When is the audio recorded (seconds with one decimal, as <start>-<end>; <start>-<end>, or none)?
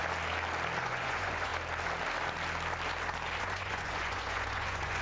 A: 0.0-0.8; 1.5-3.4